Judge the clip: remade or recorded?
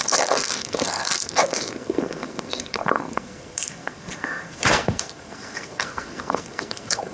remade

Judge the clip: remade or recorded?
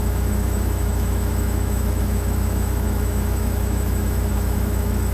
remade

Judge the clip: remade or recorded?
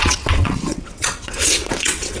remade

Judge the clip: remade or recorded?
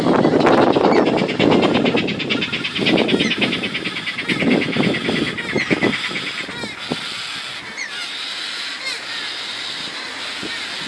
recorded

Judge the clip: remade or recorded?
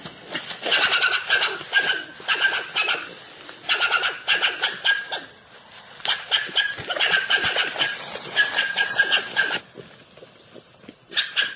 recorded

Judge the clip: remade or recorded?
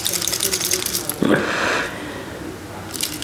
recorded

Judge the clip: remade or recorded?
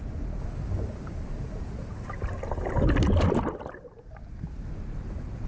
recorded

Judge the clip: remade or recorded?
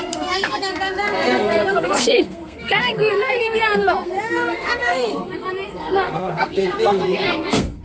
remade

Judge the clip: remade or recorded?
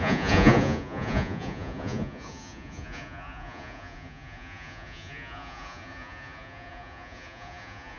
remade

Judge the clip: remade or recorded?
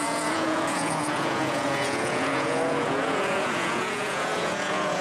remade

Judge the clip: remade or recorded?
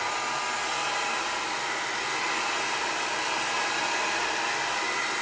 recorded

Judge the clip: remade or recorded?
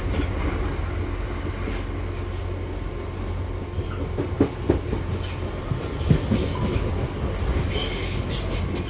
recorded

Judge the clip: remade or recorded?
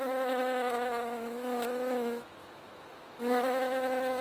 remade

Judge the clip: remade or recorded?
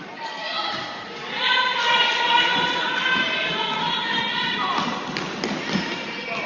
recorded